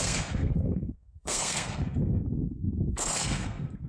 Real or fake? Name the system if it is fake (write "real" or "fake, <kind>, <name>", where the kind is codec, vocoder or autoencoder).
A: fake, codec, SNAC